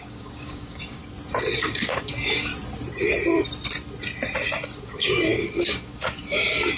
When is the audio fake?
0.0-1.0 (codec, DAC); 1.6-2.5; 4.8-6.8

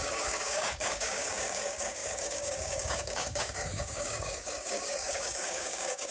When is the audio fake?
0.0-6.1 (codec, DAC)

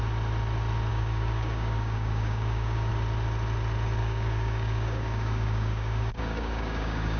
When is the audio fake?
0.9-2.9 (codec, DAC); 4.0-7.2